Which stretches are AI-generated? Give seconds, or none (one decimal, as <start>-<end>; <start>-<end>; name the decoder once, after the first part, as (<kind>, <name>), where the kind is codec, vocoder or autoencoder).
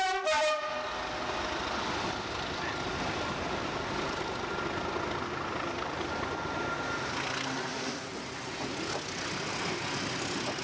none